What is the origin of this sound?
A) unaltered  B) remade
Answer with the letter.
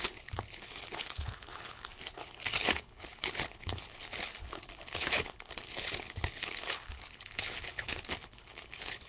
B